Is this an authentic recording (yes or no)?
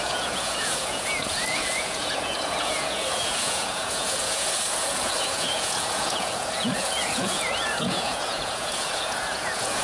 no